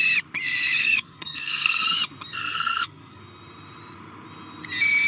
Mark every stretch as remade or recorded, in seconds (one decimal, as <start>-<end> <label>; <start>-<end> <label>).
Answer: 0.0-0.8 recorded; 0.8-1.8 remade; 1.8-2.4 recorded; 2.4-3.2 remade; 3.2-5.1 recorded